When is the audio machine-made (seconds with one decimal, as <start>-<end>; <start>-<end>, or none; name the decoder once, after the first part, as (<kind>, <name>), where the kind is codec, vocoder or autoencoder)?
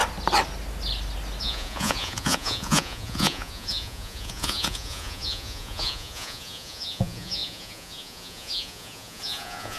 1.4-9.8 (vocoder, Vocos)